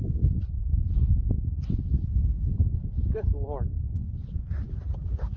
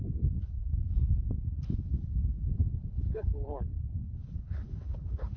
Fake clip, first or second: second